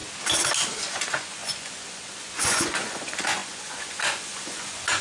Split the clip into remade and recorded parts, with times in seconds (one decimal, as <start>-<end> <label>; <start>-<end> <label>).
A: 0.0-0.8 recorded; 0.8-5.0 remade